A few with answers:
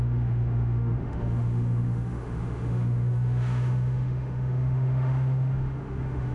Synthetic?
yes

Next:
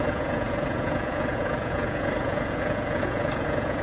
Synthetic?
yes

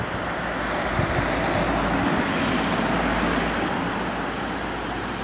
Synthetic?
no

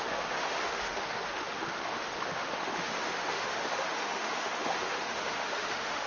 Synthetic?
yes